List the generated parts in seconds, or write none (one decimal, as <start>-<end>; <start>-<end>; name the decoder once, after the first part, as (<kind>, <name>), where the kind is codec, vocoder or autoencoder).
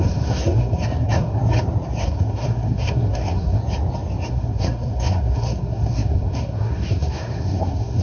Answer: 0.0-1.4 (codec, SNAC); 2.0-3.6; 4.3-8.0